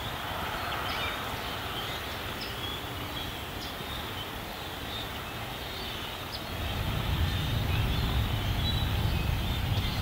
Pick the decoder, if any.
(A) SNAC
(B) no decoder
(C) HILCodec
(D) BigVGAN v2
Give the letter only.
B